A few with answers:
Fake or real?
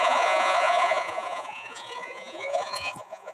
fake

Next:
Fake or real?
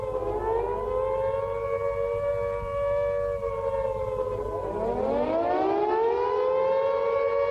real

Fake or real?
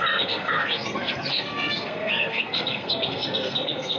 fake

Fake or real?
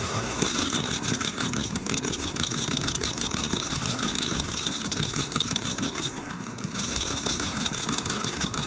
fake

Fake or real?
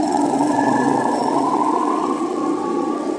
fake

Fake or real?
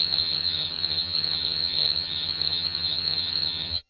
fake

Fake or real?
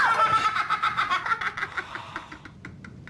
real